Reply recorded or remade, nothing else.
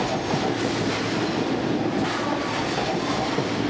recorded